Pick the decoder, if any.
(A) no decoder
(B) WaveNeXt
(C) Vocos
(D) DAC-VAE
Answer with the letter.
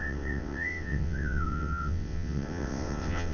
B